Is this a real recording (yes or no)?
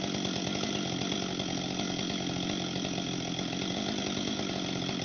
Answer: yes